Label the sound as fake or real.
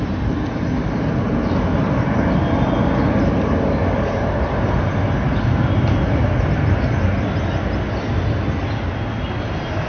real